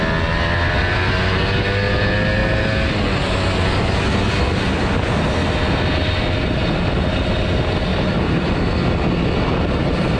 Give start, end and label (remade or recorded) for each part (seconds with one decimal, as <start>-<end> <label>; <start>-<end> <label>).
0.0-7.9 recorded; 7.9-8.5 remade; 8.5-10.2 recorded